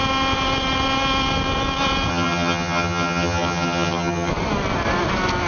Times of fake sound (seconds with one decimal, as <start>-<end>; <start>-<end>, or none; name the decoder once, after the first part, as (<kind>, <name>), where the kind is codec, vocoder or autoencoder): 2.1-4.3 (vocoder, HiFi-GAN)